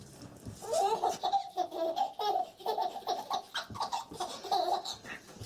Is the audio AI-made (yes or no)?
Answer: no